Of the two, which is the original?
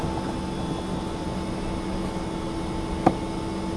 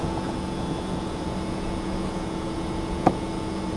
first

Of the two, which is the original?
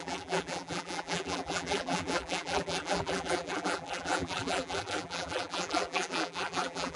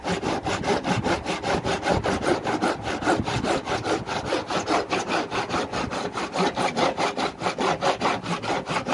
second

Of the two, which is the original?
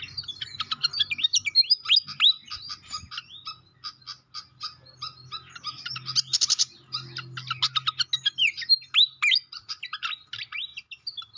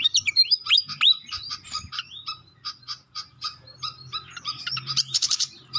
first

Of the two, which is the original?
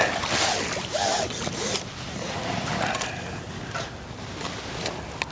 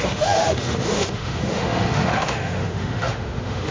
first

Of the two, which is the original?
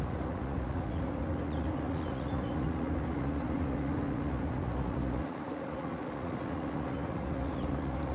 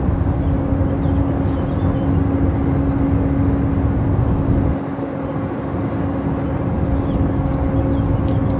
second